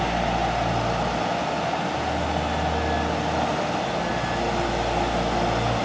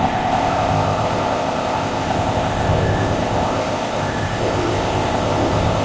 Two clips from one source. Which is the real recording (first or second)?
first